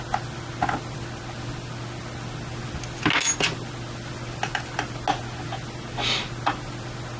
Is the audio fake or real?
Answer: real